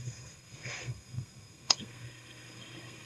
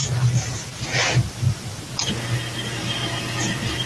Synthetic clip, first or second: first